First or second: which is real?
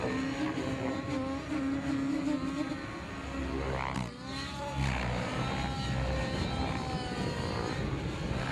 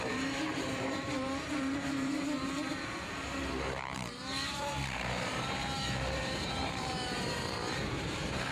first